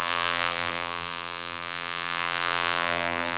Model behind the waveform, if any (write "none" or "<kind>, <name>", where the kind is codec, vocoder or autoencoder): vocoder, BigVGAN v2